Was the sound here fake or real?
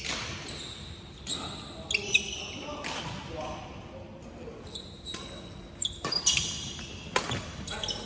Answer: real